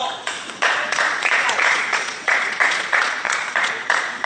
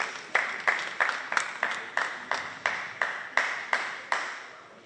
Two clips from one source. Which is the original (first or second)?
second